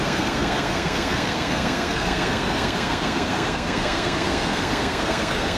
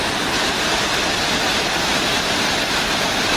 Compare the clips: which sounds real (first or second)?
second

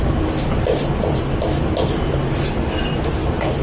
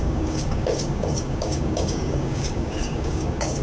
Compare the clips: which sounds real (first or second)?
first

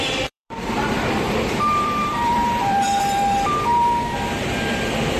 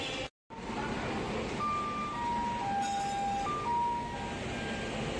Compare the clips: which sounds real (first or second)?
second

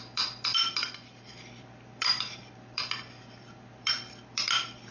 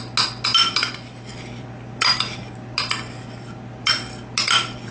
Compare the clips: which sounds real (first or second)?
second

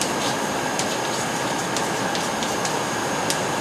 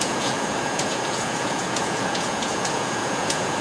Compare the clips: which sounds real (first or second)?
first